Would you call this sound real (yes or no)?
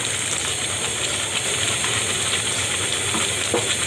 yes